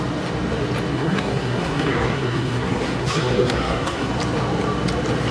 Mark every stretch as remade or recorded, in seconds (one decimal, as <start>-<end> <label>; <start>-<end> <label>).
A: 0.0-0.9 recorded; 0.9-4.1 remade; 4.1-5.3 recorded